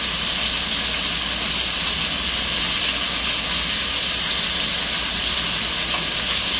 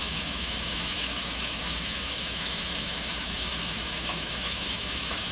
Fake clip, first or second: second